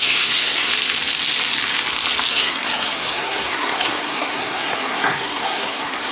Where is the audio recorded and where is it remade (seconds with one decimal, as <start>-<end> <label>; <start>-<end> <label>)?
0.0-0.7 remade; 0.7-2.3 recorded; 2.3-6.1 remade